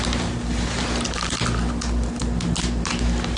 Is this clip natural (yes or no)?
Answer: yes